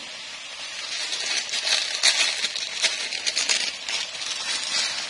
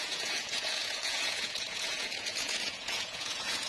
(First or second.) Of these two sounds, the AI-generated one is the second